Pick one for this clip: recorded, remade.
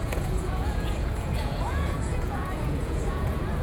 remade